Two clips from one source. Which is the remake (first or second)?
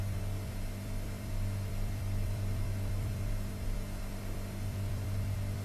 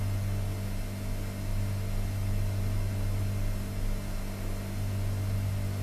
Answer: first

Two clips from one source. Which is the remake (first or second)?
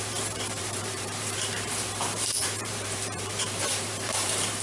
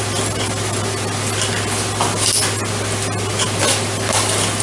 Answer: first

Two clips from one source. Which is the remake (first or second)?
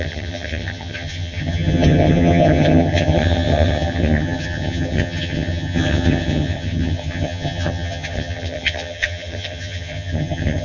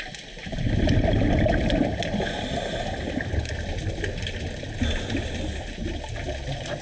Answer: first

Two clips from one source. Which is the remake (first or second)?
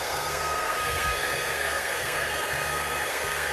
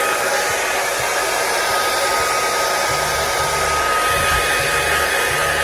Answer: first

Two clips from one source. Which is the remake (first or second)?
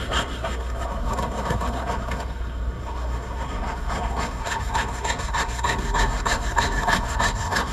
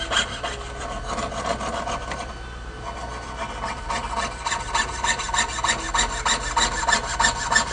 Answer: first